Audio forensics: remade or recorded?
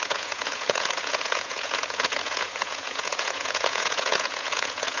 remade